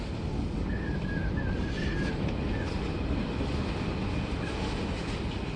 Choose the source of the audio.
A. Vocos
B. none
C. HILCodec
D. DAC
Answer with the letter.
B